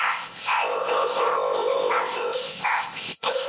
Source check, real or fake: fake